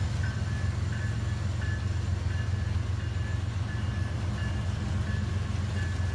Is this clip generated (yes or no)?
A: no